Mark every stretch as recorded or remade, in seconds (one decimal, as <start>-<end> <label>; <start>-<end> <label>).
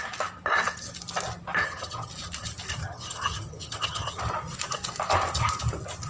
0.0-1.6 recorded; 1.6-2.1 remade; 2.1-2.8 recorded; 2.8-4.2 remade; 4.2-6.1 recorded